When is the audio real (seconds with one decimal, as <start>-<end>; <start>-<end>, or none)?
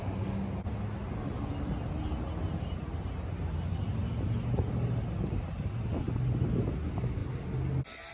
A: 0.0-8.1